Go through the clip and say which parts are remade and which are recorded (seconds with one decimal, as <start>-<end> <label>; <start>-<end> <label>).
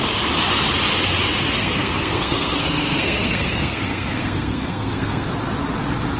0.0-1.6 recorded; 1.6-5.3 remade; 5.3-6.2 recorded